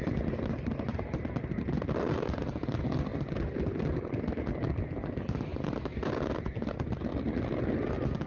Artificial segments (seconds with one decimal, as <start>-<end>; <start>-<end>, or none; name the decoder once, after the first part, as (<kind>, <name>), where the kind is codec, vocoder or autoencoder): none